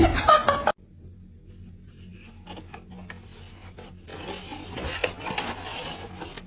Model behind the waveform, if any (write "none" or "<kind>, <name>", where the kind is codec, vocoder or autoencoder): none